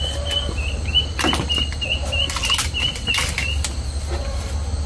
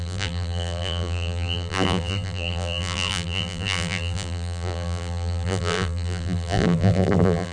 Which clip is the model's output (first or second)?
second